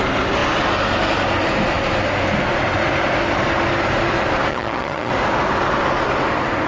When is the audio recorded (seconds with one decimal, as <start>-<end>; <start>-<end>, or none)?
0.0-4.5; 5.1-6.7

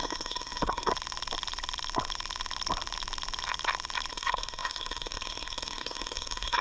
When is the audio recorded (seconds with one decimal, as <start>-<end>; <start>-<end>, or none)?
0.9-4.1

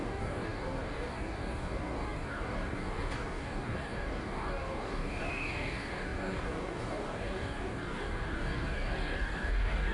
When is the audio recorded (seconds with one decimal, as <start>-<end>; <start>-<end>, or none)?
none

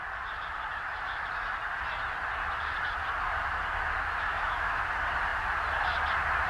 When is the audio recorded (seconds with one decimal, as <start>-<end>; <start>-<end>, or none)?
0.0-4.3; 4.8-6.5

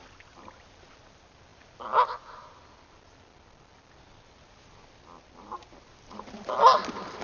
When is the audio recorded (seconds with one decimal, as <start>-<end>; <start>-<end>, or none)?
0.0-7.2

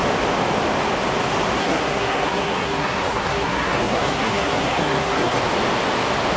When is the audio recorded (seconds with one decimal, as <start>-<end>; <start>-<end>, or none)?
0.0-1.6; 5.4-6.4